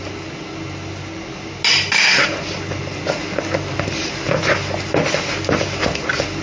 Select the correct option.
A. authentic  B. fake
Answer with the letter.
A